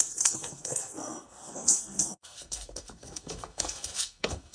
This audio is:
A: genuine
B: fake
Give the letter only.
B